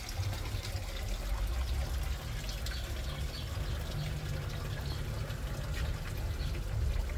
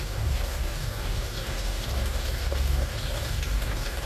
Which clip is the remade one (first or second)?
second